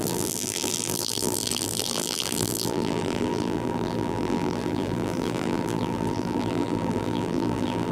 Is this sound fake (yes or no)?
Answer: yes